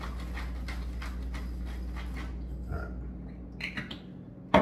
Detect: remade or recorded recorded